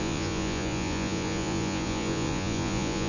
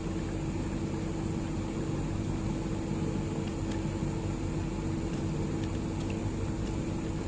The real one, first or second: second